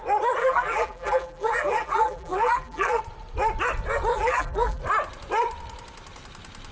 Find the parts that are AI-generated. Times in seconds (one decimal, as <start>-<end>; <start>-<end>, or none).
0.4-3.0; 4.1-4.8